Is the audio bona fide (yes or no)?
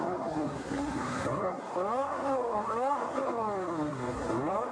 no